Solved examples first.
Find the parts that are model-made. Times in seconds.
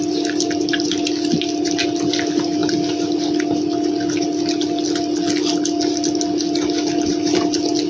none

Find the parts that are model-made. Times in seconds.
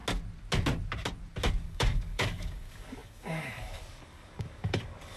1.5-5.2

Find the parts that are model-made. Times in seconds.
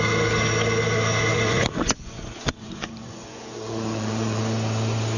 1.3-4.4